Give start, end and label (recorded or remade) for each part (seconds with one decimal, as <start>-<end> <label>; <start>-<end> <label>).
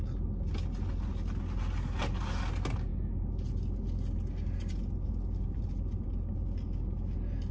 0.0-7.5 recorded